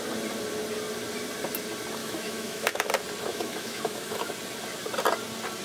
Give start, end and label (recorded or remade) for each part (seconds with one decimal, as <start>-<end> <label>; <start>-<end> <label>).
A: 0.0-2.0 recorded; 2.0-2.9 remade; 2.9-3.3 recorded; 3.3-4.3 remade; 4.3-5.6 recorded